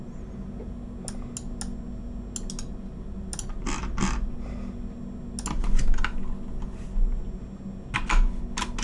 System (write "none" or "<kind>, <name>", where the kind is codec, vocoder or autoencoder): none